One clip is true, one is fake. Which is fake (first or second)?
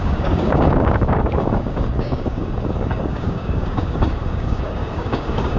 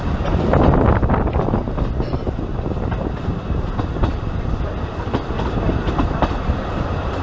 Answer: first